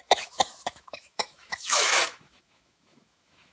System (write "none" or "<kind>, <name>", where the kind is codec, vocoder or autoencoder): autoencoder, DAC-VAE